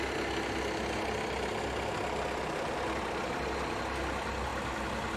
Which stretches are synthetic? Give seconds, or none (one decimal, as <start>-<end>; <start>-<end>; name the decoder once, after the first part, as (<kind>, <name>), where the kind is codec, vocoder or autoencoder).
none